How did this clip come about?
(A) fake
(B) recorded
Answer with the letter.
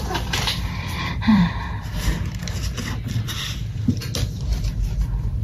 A